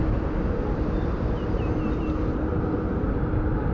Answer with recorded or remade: recorded